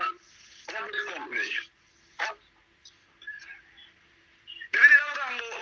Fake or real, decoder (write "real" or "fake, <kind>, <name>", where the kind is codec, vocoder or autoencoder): real